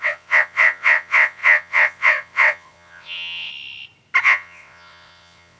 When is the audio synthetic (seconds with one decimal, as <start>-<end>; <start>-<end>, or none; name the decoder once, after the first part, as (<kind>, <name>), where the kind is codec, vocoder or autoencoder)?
0.0-3.5 (vocoder, WaveNeXt); 4.2-5.6